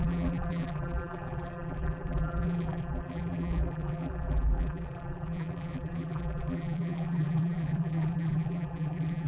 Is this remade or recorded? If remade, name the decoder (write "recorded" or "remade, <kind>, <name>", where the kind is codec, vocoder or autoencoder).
remade, vocoder, BigVGAN v2